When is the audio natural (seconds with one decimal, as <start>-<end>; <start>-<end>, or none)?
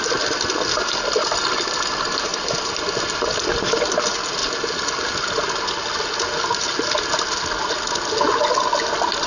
0.0-2.3; 3.6-4.4; 5.4-9.3